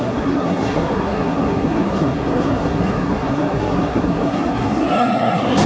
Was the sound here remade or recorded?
remade